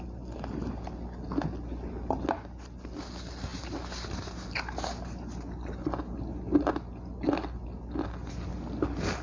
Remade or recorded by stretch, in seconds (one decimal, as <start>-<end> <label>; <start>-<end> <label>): 0.0-9.2 recorded